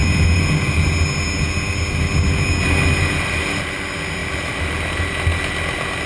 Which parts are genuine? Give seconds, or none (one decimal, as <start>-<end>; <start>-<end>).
0.5-4.2; 5.1-6.1